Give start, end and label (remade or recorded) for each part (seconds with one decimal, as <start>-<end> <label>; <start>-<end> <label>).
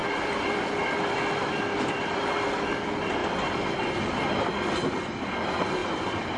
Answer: 0.0-2.6 remade; 2.6-3.2 recorded; 3.2-5.0 remade; 5.0-5.8 recorded; 5.8-6.4 remade